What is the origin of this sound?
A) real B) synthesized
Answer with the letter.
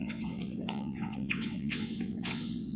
B